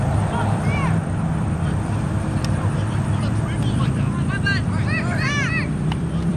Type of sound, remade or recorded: remade